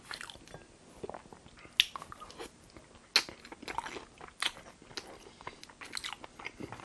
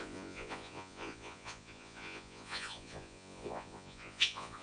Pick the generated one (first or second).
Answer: second